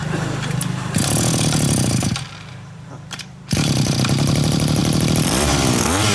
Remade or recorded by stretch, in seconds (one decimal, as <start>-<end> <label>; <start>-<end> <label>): 0.0-2.5 recorded; 2.5-6.1 remade